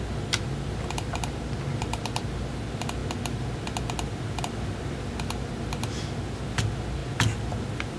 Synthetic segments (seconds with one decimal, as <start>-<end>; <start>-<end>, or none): none